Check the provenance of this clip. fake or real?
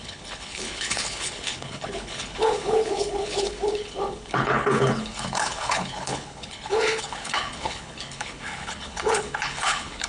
fake